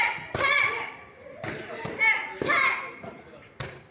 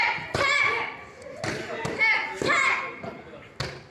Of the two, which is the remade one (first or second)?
first